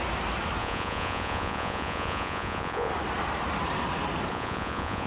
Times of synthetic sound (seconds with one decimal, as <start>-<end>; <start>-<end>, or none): 0.6-2.9; 4.3-5.1